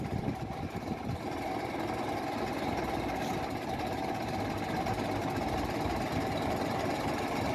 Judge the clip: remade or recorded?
remade